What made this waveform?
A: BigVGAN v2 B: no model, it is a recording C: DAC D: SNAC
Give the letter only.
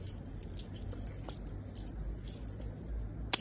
B